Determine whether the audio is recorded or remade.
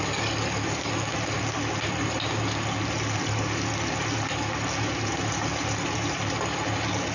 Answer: recorded